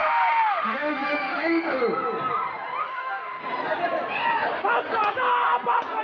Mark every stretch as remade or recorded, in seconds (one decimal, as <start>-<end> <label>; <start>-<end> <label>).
0.0-1.8 remade; 1.8-2.8 recorded; 2.8-3.4 remade; 3.4-6.0 recorded